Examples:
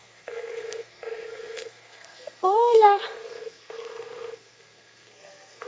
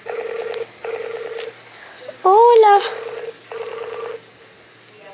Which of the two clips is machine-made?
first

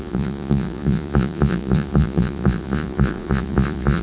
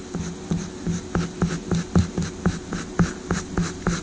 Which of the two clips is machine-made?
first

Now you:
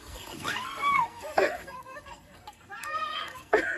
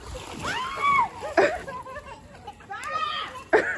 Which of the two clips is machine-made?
first